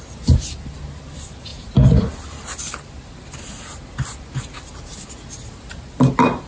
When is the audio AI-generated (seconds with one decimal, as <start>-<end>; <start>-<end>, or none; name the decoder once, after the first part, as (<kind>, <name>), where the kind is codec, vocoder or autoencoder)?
none